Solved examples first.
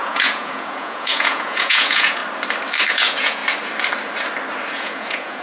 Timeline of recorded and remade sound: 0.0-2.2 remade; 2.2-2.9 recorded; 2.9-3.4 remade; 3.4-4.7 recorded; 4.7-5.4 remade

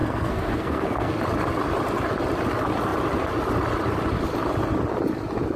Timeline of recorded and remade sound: 0.0-1.2 remade; 1.2-5.6 recorded

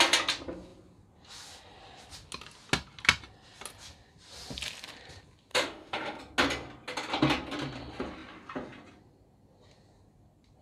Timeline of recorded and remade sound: 0.0-5.5 recorded; 5.5-6.2 remade; 6.2-10.6 recorded

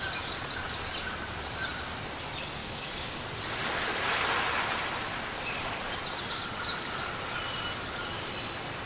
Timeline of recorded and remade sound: 0.0-2.6 recorded; 2.6-3.2 remade; 3.2-8.9 recorded

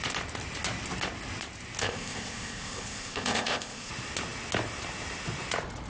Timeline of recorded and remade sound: 0.0-1.8 recorded; 1.8-3.9 remade; 3.9-5.9 recorded

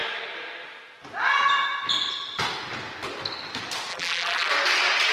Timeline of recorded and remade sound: 0.0-3.9 recorded; 3.9-4.5 remade; 4.5-5.1 recorded

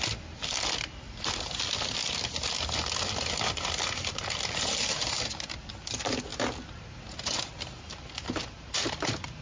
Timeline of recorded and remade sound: 0.0-9.4 recorded